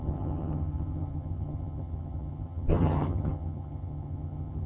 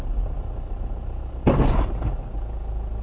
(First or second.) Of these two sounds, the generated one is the first